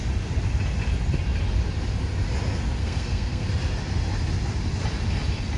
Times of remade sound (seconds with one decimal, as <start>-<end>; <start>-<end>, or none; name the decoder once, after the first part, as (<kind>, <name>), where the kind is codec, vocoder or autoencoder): 2.8-3.5 (codec, SNAC)

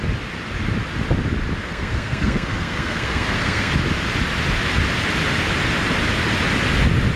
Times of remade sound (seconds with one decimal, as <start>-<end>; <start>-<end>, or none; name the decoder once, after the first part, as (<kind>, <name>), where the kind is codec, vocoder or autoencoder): 1.6-3.7 (codec, SNAC)

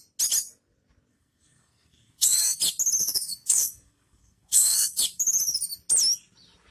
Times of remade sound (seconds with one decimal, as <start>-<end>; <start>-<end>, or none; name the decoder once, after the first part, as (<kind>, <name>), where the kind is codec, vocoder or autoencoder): 1.1-2.6 (codec, SNAC); 3.0-5.0

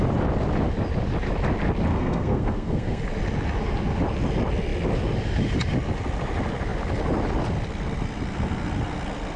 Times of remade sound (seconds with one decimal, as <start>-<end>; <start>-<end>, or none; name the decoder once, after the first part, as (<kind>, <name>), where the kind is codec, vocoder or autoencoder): 1.9-3.0 (codec, SNAC)

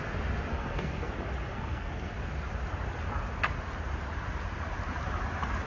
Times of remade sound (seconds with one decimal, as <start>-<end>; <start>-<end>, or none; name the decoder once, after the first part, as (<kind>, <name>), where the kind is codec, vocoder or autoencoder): 0.5-1.1 (codec, SNAC); 1.5-2.1

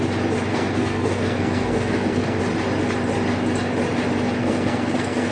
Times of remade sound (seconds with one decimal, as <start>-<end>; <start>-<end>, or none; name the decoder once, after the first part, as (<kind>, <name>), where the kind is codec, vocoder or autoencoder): 0.5-2.4 (codec, SNAC); 4.4-5.3

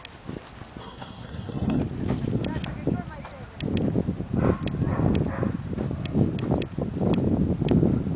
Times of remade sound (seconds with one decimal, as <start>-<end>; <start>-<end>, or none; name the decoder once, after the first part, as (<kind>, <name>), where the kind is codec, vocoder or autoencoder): 0.8-1.8 (codec, SNAC)